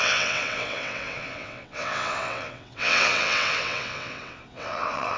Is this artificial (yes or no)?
yes